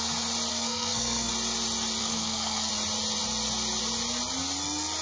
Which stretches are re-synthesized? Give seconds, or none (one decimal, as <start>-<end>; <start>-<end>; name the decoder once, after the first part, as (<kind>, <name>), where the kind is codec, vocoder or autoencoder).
0.5-1.3 (codec, SNAC); 2.0-2.7